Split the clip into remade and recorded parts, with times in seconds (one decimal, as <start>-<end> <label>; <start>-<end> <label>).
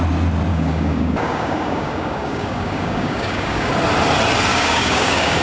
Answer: 0.0-0.5 recorded; 0.5-3.7 remade; 3.7-4.5 recorded; 4.5-5.4 remade